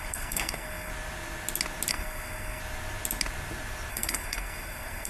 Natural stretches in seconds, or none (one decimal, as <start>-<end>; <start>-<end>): 0.9-1.9; 2.6-3.9